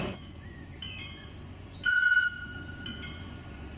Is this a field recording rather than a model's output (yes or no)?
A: no